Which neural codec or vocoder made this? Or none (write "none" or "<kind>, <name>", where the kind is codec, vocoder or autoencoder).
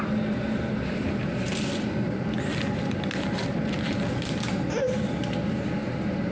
none